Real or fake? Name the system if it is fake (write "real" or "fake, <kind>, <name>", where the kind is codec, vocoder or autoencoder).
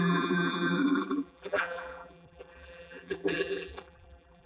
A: fake, vocoder, BigVGAN v2